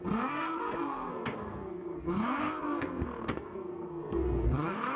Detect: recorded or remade remade